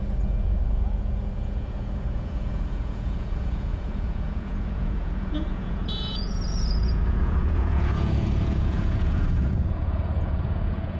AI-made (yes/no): yes